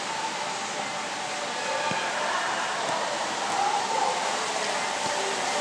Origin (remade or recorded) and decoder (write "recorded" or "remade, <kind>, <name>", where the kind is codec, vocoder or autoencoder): recorded